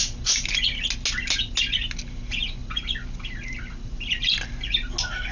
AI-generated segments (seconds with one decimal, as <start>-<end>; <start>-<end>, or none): none